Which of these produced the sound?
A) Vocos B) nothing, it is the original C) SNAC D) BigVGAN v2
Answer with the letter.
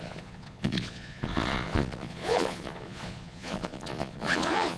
A